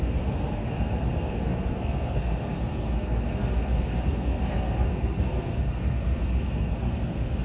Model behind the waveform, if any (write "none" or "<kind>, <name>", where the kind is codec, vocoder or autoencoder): codec, SNAC